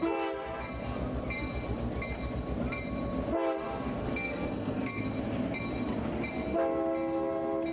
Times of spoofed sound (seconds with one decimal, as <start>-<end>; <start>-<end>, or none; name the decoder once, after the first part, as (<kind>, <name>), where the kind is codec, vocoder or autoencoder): 4.0-5.0 (codec, SNAC)